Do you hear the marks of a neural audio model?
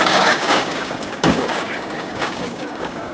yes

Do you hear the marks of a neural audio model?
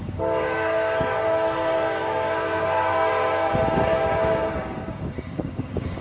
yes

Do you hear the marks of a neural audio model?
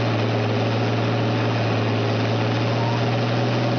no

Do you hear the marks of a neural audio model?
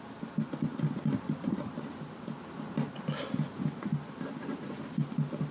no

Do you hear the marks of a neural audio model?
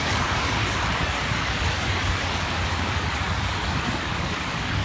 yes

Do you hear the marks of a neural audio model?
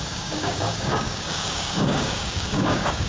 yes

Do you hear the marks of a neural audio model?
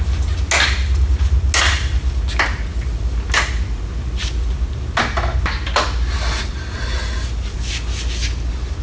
no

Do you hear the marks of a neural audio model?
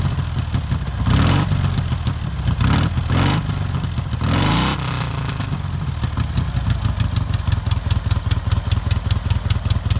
no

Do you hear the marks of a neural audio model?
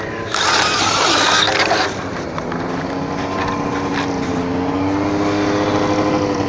no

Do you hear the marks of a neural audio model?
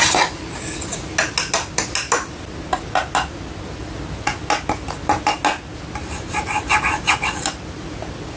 no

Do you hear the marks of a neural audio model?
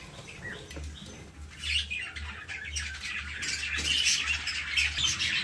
no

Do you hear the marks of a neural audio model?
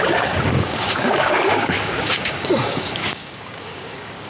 yes